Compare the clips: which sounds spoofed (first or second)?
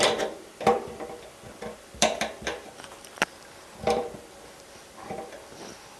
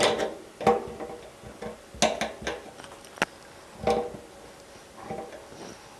first